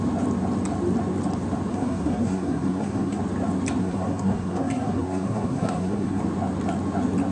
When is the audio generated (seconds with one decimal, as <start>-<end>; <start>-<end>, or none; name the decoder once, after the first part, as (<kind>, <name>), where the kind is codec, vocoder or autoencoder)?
1.7-3.2 (codec, SNAC); 3.8-6.2